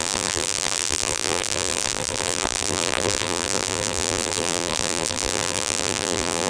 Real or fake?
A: fake